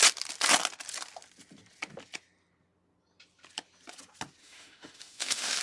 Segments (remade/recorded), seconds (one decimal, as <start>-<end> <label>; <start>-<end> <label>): 0.0-4.4 recorded; 4.4-5.6 remade